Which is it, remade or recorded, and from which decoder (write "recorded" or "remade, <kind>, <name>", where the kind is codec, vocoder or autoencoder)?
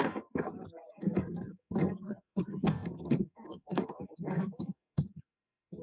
remade, codec, SNAC